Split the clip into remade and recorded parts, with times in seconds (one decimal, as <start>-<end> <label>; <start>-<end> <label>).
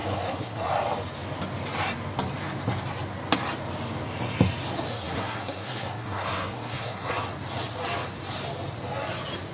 0.0-0.7 remade; 0.7-4.9 recorded; 4.9-7.1 remade; 7.1-9.5 recorded